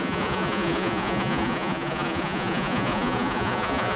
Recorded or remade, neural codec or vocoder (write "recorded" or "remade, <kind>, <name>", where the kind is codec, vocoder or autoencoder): remade, vocoder, Vocos